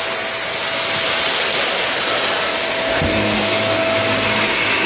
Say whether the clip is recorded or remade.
recorded